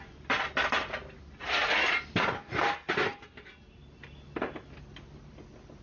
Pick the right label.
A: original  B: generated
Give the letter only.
A